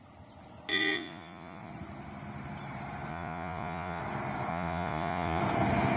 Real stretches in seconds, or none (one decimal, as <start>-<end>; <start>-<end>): 0.0-0.7; 1.7-3.1; 4.0-4.5; 5.4-6.0